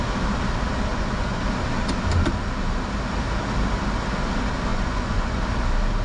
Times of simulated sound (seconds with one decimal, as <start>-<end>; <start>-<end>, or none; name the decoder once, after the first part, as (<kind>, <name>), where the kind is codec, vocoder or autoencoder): 0.9-1.4 (vocoder, Vocos); 4.7-5.4